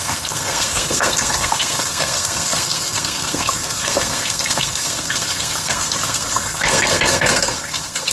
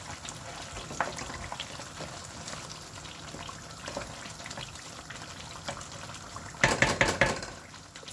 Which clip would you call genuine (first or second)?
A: second